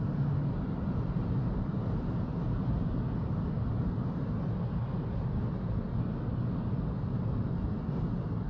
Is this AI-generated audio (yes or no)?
no